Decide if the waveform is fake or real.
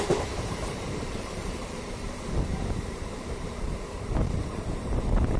fake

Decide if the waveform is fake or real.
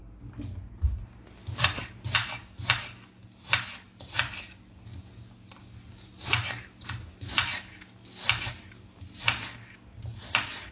real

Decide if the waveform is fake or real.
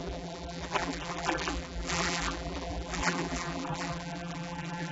fake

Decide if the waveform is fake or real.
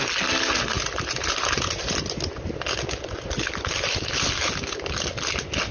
real